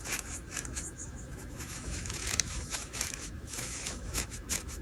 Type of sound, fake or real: fake